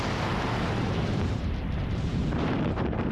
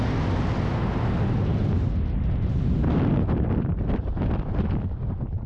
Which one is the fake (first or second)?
first